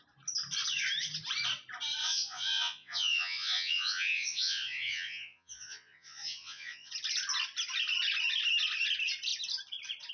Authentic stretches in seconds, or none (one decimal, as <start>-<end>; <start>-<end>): 0.0-2.0; 6.9-10.1